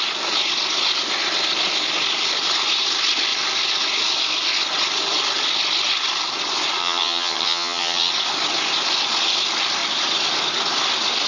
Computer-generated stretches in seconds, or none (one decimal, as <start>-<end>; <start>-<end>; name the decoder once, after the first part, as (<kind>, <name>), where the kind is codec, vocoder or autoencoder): 6.8-8.1 (vocoder, HiFi-GAN)